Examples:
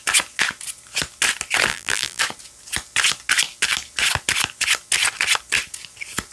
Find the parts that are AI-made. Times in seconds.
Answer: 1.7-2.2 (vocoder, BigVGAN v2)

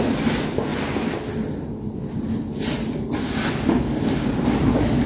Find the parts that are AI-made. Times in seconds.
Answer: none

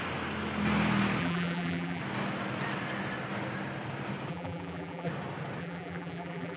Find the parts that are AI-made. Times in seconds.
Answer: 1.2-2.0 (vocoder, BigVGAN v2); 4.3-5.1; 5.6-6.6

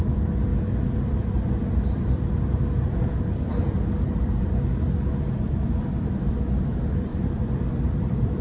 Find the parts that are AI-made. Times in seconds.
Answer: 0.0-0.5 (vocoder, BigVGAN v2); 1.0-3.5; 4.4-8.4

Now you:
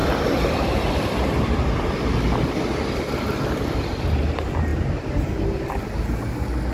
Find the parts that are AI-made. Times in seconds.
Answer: none